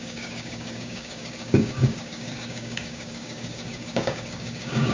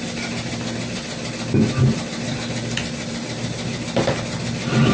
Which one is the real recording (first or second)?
second